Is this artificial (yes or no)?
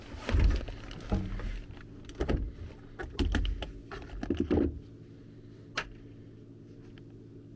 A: no